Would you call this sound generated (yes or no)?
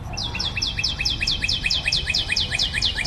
no